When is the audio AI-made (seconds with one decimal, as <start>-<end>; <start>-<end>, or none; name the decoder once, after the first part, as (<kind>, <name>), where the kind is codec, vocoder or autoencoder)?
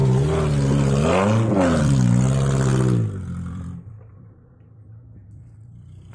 1.8-2.7 (vocoder, BigVGAN v2); 3.2-6.1